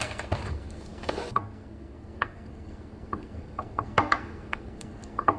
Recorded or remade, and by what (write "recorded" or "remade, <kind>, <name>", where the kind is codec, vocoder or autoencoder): remade, codec, SNAC